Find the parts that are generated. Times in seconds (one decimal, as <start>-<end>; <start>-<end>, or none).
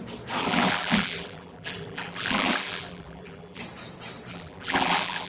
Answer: 0.4-3.6; 4.3-5.3